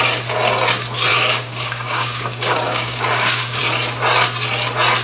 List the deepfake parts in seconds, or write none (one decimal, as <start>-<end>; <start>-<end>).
1.1-3.6